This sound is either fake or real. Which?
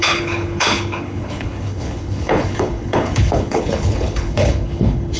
fake